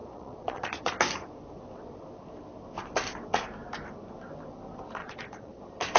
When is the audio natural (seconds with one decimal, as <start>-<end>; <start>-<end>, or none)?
0.9-5.0; 5.6-6.0